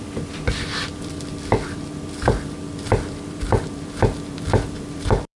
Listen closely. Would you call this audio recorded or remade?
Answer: remade